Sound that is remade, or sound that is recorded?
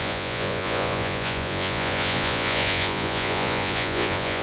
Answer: remade